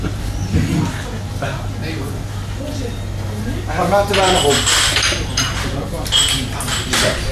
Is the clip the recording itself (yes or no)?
yes